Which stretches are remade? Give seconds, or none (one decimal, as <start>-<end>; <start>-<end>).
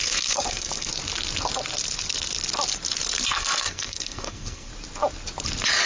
0.0-0.9; 3.3-4.7